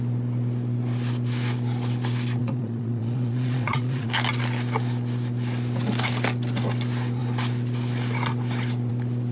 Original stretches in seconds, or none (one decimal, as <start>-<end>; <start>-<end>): 0.0-2.4; 4.1-9.3